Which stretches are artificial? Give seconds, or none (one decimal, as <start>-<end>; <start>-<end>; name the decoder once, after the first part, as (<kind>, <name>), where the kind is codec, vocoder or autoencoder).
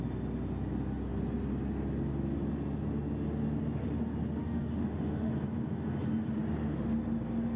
4.4-5.3 (autoencoder, DAC-VAE)